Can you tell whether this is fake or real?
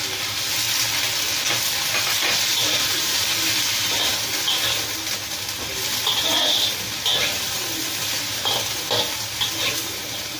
real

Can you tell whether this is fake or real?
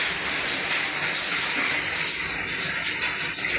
real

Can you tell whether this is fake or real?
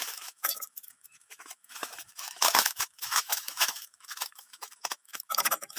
fake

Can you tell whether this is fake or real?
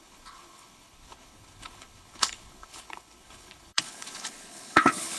fake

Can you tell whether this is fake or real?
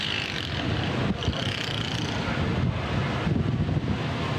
real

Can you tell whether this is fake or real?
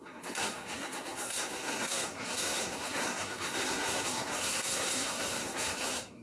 fake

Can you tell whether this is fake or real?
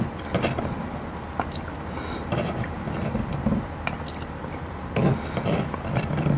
real